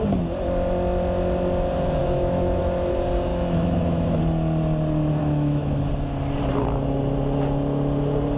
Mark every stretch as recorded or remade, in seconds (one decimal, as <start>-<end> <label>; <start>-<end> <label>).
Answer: 0.0-2.0 recorded; 2.0-2.6 remade; 2.6-3.3 recorded; 3.3-4.2 remade; 4.2-5.2 recorded; 5.2-5.9 remade; 5.9-8.4 recorded